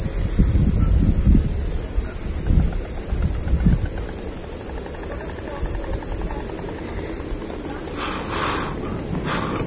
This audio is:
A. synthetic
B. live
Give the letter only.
B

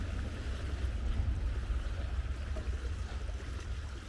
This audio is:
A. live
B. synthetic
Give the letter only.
A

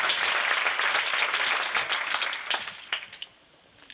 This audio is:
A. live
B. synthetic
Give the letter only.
A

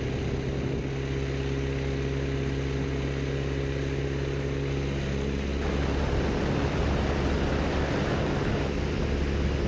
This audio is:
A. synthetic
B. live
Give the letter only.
B